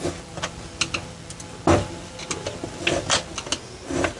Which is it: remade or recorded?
recorded